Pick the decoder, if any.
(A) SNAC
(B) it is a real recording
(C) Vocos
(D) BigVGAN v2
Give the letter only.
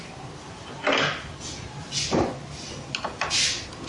B